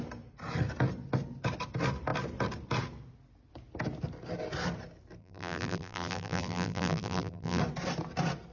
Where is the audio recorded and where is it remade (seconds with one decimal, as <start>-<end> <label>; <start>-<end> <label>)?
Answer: 0.0-5.2 recorded; 5.2-7.6 remade; 7.6-8.5 recorded